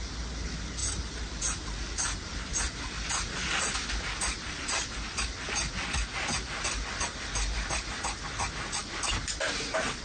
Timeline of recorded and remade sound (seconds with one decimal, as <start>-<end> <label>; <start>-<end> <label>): 0.0-10.0 recorded